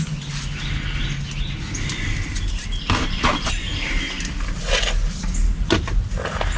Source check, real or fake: real